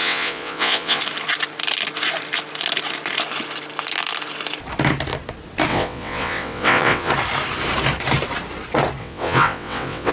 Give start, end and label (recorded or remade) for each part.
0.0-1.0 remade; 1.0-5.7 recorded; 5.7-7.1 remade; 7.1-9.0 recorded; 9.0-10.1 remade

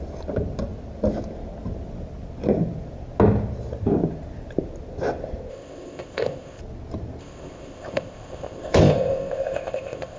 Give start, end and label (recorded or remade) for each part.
0.0-5.5 recorded; 5.5-6.6 remade; 6.6-7.2 recorded; 7.2-10.2 remade

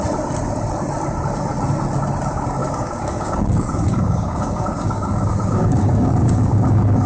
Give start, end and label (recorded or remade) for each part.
0.0-2.6 recorded; 2.6-7.1 remade